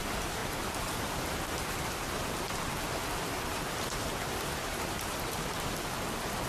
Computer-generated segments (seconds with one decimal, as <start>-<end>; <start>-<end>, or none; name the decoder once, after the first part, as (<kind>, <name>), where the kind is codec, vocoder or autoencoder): 0.4-2.8 (vocoder, BigVGAN v2)